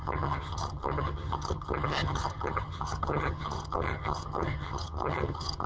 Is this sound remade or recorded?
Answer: remade